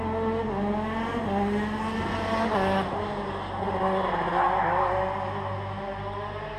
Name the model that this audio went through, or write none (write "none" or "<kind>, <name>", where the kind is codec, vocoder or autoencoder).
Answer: none